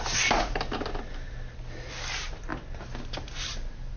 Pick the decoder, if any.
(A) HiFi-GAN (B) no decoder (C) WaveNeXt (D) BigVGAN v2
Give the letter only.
B